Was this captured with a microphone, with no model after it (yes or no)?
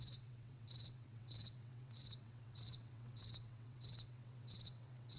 no